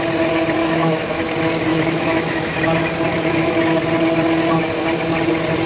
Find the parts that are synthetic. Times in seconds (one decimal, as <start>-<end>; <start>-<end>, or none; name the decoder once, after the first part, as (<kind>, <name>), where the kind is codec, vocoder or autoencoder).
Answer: 0.6-1.2 (autoencoder, DAC-VAE); 1.7-2.6; 3.1-3.6

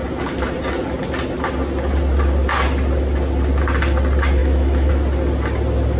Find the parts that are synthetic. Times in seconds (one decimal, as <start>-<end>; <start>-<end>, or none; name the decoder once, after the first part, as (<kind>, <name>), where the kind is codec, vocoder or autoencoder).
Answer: 4.4-4.9 (autoencoder, DAC-VAE)

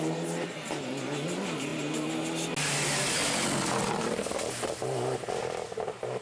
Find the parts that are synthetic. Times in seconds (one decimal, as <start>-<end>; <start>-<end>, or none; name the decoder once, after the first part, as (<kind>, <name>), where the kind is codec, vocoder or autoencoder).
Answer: none

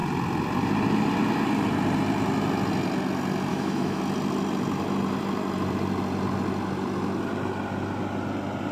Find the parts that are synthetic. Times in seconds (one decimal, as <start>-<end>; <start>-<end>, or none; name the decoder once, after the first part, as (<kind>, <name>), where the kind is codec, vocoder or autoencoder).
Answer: 3.5-4.0 (autoencoder, DAC-VAE)

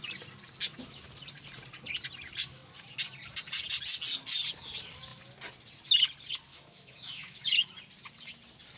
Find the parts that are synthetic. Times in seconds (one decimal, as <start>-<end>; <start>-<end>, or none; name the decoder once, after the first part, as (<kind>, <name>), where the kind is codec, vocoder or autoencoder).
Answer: 6.5-7.7 (autoencoder, DAC-VAE)

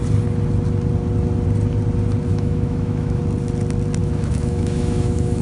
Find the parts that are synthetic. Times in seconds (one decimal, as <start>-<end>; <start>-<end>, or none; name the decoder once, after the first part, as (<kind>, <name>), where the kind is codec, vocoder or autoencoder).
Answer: 2.3-3.2 (autoencoder, DAC-VAE); 4.0-5.4

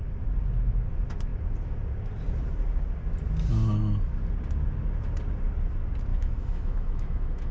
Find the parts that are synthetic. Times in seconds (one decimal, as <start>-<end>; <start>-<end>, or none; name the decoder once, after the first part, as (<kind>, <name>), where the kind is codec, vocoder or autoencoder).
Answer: 6.1-7.5 (autoencoder, DAC-VAE)